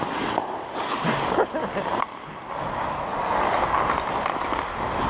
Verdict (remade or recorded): recorded